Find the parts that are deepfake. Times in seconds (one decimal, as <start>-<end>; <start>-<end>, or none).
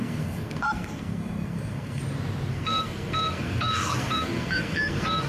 0.0-2.0; 2.5-5.3